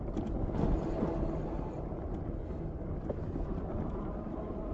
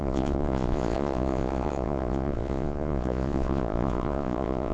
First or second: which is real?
first